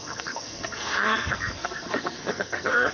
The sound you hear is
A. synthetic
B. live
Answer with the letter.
A